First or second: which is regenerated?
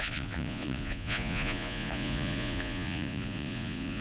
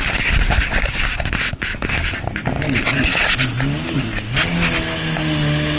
first